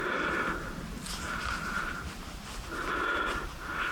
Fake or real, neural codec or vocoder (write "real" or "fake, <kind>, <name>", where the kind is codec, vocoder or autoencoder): real